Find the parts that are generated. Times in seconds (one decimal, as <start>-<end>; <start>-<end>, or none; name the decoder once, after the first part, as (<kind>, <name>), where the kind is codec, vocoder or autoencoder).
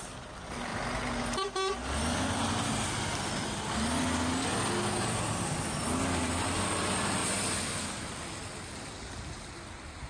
none